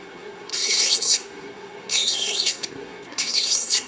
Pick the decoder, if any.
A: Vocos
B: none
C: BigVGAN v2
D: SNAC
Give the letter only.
D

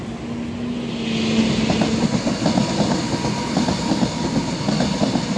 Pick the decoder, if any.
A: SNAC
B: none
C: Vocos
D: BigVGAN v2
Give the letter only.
B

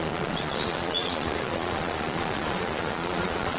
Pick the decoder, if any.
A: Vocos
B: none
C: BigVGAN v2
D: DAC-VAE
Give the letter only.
A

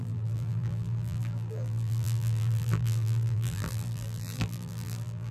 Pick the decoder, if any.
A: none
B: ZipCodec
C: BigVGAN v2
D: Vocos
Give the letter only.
C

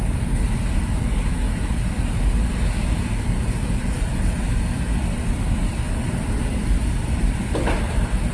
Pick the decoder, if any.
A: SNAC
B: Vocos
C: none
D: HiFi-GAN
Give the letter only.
C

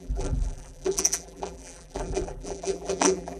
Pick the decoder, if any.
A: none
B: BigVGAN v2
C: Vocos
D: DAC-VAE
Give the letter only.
B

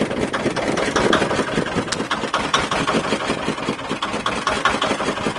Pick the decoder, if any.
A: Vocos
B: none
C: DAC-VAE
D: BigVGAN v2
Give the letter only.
B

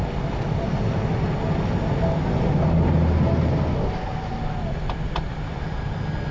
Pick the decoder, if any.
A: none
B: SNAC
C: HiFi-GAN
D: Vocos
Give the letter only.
A